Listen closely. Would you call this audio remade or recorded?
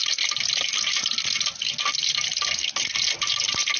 recorded